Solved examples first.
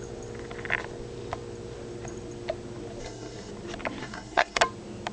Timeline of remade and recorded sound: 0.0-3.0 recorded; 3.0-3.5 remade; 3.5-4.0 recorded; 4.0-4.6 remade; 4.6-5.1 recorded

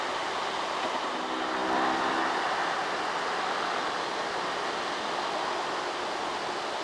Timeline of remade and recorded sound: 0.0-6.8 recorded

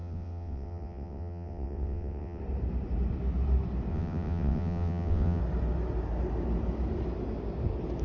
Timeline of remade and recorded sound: 0.0-2.4 remade; 2.4-3.9 recorded; 3.9-5.4 remade; 5.4-8.0 recorded

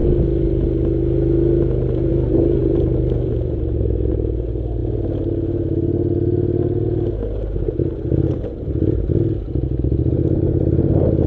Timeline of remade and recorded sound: 0.0-2.6 recorded; 2.6-4.1 remade; 4.1-11.3 recorded

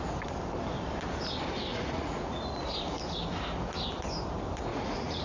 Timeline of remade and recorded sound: 0.0-1.7 recorded; 1.7-2.6 remade; 2.6-4.7 recorded; 4.7-5.2 remade

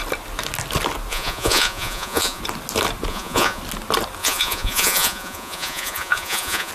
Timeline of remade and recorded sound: 0.0-1.1 recorded; 1.1-2.4 remade; 2.4-3.1 recorded; 3.1-3.6 remade; 3.6-4.2 recorded; 4.2-6.7 remade

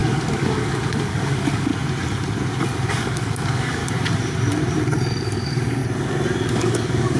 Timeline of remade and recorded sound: 0.0-1.7 remade; 1.7-2.9 recorded; 2.9-3.8 remade; 3.8-5.2 recorded; 5.2-5.8 remade; 5.8-6.5 recorded; 6.5-7.2 remade

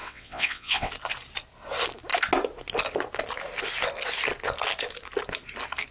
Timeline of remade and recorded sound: 0.0-0.9 remade; 0.9-5.9 recorded